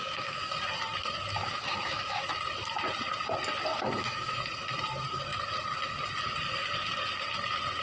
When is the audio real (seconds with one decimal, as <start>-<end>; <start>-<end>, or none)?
0.5-1.4; 2.3-3.7; 4.4-7.8